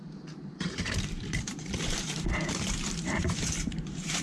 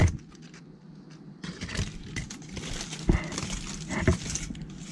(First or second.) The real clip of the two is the second